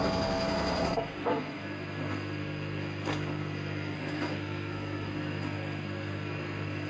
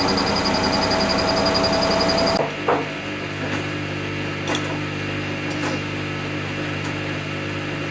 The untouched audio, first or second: second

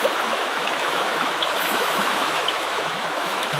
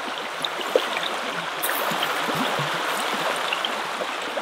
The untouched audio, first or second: second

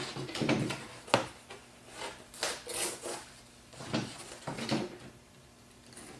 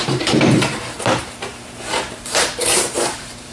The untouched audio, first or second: first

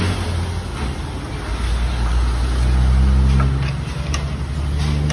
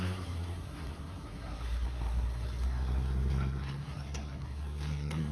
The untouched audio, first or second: first